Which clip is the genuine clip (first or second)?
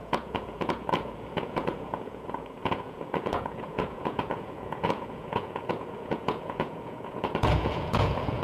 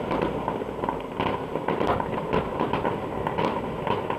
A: second